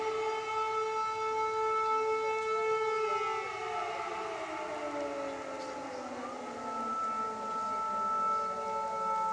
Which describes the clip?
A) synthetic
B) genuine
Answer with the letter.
B